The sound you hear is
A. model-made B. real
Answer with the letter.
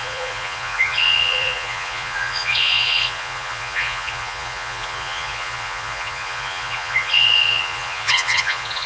A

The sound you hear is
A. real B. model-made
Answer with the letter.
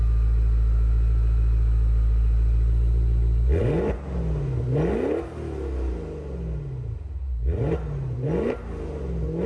A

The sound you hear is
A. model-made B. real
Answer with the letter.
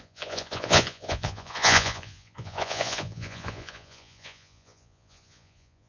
A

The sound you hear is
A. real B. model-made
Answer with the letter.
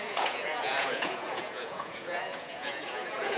B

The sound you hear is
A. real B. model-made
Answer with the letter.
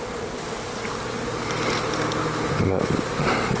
A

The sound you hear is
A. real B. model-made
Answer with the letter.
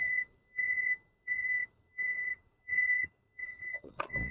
B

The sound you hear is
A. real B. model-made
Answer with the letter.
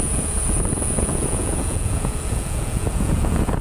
B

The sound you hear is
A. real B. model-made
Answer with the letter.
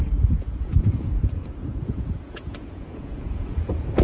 B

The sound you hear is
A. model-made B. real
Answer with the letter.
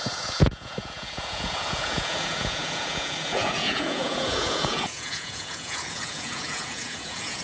A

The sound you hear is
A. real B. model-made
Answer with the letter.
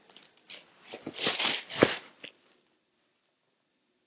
A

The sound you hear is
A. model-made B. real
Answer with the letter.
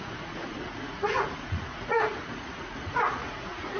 A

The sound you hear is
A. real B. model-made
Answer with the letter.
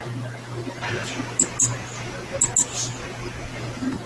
A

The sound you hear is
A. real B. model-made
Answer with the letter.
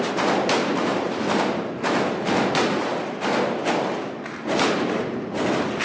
A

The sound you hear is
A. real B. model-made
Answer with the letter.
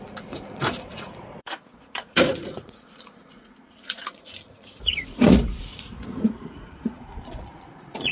B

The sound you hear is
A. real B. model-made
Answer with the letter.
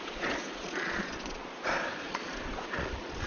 B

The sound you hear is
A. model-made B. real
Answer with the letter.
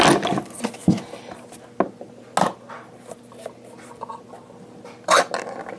B